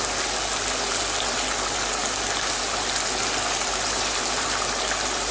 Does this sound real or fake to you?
real